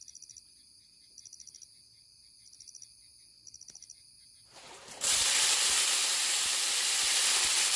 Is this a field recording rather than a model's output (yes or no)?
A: yes